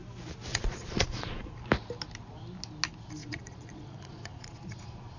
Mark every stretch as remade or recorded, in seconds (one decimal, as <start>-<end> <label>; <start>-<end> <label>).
0.0-0.5 recorded; 0.5-1.5 remade; 1.5-3.2 recorded; 3.2-5.2 remade